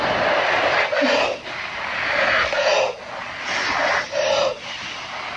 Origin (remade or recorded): recorded